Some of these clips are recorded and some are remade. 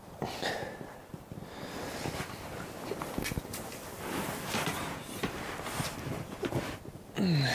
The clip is recorded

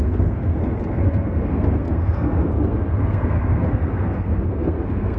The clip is remade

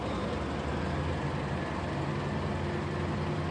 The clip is recorded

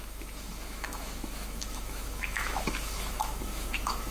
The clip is remade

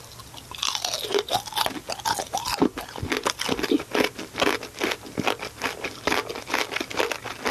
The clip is recorded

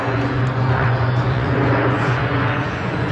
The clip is remade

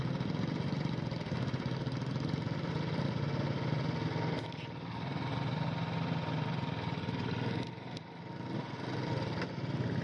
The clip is recorded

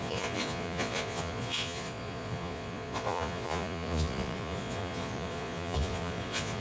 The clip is remade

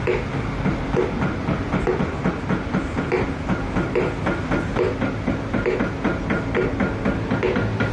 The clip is recorded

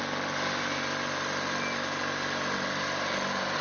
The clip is recorded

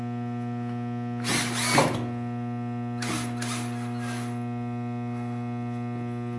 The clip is recorded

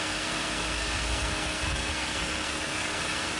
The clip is remade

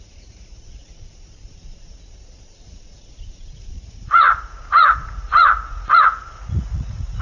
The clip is remade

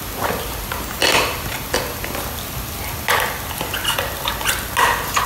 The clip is recorded